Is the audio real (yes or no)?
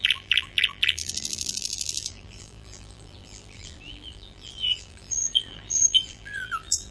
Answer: no